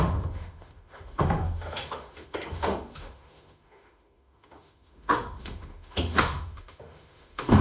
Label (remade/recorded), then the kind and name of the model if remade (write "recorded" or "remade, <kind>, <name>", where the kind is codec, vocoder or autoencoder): remade, autoencoder, DAC-VAE